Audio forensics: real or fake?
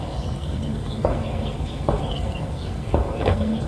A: fake